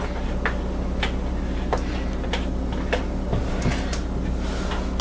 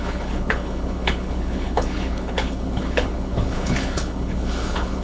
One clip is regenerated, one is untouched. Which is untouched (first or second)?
first